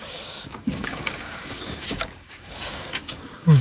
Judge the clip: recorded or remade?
remade